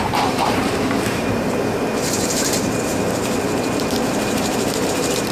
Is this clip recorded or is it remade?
remade